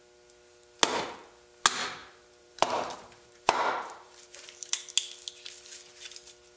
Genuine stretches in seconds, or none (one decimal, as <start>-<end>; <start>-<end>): 0.0-2.0; 4.7-6.6